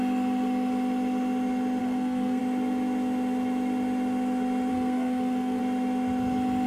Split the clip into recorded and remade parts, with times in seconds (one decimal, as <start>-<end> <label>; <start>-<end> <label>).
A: 0.0-1.8 recorded; 1.8-2.4 remade; 2.4-4.7 recorded; 4.7-5.6 remade; 5.6-6.7 recorded